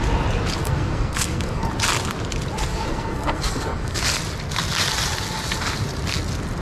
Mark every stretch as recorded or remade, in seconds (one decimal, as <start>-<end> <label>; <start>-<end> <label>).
0.0-0.6 recorded; 0.6-1.7 remade; 1.7-2.7 recorded; 2.7-4.0 remade; 4.0-6.6 recorded